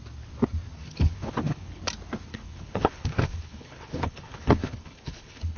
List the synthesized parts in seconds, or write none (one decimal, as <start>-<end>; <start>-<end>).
0.8-1.8; 2.3-5.6